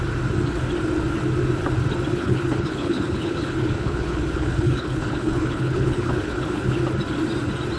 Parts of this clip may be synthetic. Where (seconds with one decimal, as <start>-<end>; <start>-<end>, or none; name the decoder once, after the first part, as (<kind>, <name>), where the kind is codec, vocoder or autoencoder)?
2.1-6.8 (codec, HILCodec)